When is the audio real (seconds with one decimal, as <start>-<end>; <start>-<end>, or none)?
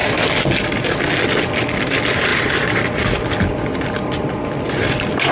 0.0-2.3; 3.2-5.3